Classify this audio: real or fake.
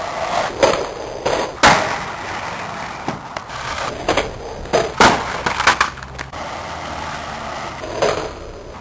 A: real